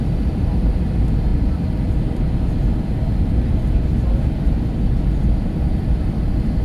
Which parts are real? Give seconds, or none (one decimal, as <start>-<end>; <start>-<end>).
0.0-1.3; 1.8-6.6